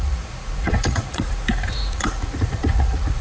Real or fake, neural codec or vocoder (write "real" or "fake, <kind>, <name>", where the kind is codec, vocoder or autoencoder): fake, vocoder, Vocos